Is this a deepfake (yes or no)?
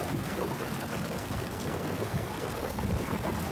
yes